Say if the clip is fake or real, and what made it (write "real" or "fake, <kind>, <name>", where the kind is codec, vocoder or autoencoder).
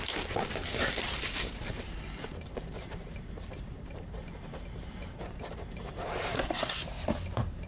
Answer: fake, vocoder, BigVGAN v2